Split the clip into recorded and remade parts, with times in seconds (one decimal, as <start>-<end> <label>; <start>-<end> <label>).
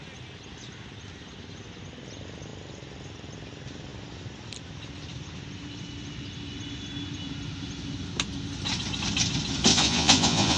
0.0-9.7 recorded; 9.7-10.6 remade